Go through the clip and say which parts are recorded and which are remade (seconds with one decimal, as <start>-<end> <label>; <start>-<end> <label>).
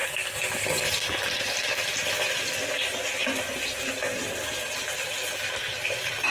0.0-6.3 recorded